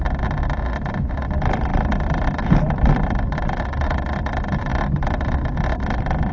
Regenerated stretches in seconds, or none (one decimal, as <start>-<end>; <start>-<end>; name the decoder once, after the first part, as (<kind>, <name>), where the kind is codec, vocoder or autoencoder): none